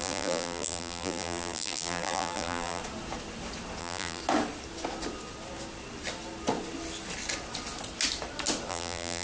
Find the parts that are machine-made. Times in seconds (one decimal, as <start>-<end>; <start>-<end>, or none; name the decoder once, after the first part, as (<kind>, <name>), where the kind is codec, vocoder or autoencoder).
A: 0.0-2.8 (vocoder, BigVGAN v2); 3.8-4.2; 8.7-9.2

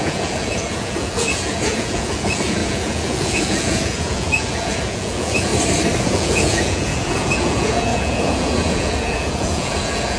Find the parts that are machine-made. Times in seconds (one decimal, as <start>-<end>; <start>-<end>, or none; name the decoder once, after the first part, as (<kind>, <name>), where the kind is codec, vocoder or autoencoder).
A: 0.0-5.5 (vocoder, Vocos); 6.0-10.2

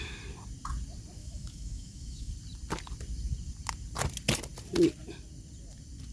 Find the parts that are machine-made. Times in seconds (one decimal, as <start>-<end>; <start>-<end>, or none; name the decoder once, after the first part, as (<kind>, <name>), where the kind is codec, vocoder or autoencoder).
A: 1.2-2.3 (autoencoder, DAC-VAE)

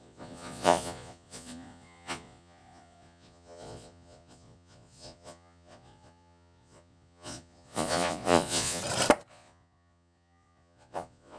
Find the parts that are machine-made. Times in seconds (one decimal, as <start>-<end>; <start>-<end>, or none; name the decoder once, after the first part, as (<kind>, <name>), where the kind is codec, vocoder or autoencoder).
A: 0.0-8.8 (vocoder, Vocos); 9.3-11.4

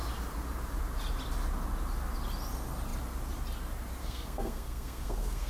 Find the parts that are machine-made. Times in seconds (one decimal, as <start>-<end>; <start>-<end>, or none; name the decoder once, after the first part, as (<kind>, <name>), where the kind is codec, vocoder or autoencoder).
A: 4.0-5.5 (codec, SNAC)

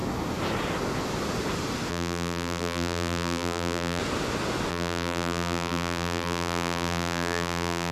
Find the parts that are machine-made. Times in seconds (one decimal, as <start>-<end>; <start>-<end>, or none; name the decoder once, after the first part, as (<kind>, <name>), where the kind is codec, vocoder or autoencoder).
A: 1.9-4.0 (vocoder, BigVGAN v2); 4.7-7.9

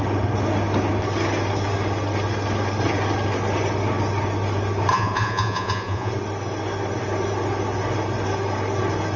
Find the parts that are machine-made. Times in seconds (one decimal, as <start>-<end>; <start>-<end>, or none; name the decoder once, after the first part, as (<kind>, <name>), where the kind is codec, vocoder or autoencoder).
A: 4.9-6.1 (vocoder, Vocos)

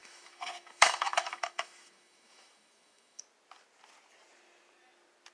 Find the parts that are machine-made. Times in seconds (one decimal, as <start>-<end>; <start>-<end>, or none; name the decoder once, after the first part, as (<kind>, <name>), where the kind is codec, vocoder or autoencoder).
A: 0.0-3.2 (autoencoder, DAC-VAE)